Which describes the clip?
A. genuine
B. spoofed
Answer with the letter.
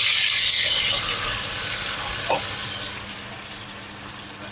A